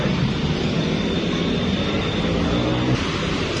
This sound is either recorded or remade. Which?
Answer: recorded